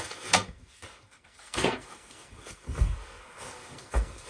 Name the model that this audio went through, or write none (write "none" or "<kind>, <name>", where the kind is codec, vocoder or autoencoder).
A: codec, SNAC